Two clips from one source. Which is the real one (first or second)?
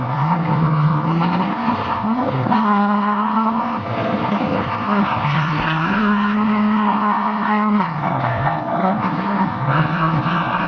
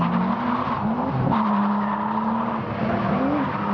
second